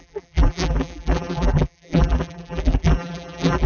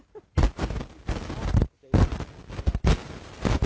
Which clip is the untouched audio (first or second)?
second